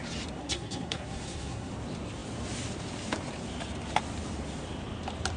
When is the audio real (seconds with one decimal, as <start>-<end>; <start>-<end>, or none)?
0.0-0.4; 1.7-5.4